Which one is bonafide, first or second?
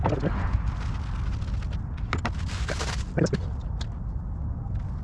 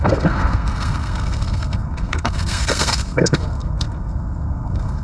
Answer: first